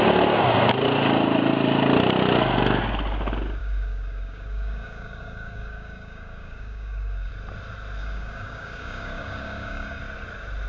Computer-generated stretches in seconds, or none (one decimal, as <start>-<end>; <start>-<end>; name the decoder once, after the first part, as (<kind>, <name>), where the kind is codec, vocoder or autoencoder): 3.6-7.3 (codec, DAC); 8.0-10.0